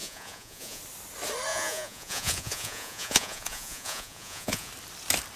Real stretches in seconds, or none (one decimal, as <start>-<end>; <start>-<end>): 0.8-1.5; 4.7-5.4